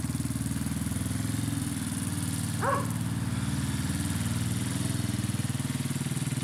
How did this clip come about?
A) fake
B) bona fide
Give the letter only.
B